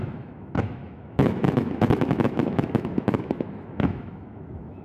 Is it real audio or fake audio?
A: fake